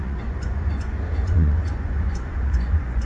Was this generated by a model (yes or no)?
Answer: yes